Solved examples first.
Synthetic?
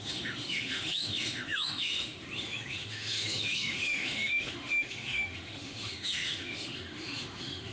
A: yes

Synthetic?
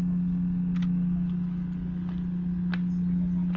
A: no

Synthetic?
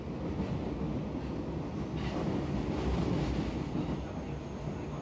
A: no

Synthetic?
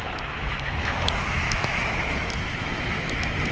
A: yes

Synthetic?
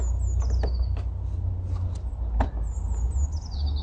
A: no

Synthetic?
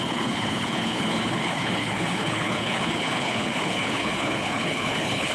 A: yes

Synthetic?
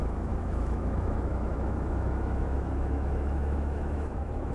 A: yes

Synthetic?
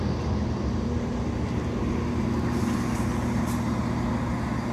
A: no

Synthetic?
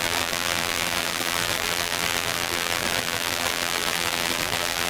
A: yes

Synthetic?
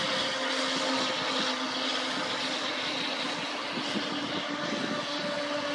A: no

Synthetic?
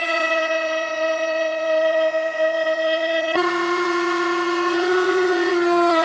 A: yes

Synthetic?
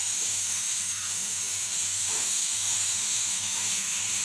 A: yes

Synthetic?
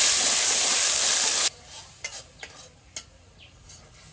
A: no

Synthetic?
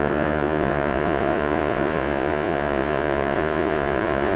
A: yes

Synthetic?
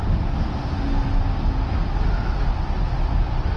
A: no